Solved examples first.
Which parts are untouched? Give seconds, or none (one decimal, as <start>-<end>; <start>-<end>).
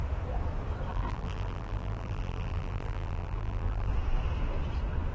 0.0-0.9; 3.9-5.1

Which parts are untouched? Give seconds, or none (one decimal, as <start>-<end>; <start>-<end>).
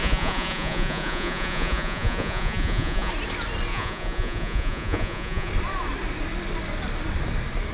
3.1-3.7; 5.5-7.7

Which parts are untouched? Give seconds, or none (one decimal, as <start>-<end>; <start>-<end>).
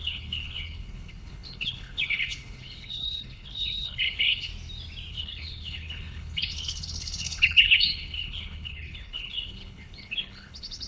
4.5-5.1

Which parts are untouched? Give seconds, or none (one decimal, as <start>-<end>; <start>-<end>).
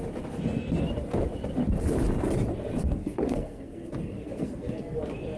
0.0-3.0; 5.0-5.4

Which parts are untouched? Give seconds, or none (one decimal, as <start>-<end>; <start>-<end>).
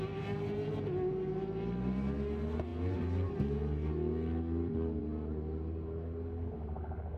0.0-7.2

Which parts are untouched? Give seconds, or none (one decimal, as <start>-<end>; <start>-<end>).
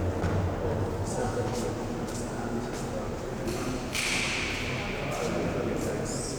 0.0-1.2; 1.7-6.4